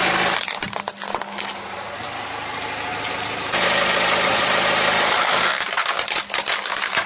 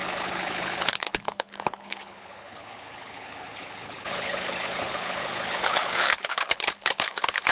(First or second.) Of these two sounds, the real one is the first